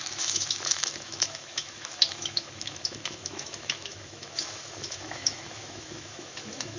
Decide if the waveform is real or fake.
fake